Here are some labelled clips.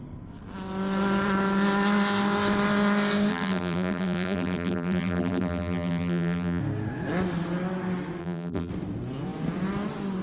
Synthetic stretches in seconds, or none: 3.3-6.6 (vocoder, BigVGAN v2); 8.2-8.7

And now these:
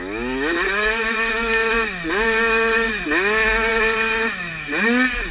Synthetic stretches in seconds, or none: none

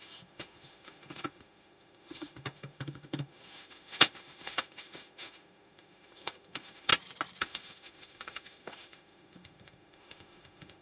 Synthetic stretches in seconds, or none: 0.0-6.9 (autoencoder, DAC-VAE); 7.4-10.8

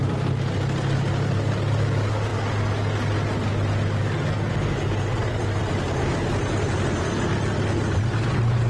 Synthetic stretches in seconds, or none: none

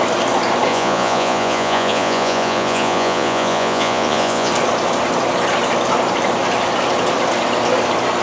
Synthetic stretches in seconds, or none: 0.7-4.5 (vocoder, Vocos)

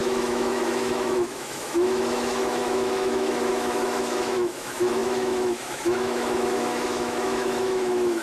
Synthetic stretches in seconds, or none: 0.0-8.2 (autoencoder, DAC-VAE)

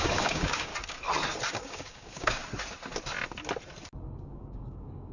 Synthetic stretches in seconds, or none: 0.0-0.7 (codec, DAC); 1.5-2.4; 4.2-5.1